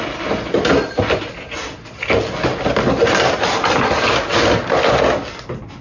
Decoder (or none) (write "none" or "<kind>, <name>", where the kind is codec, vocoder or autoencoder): none